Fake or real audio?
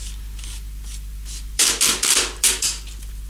fake